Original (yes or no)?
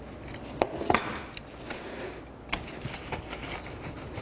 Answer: yes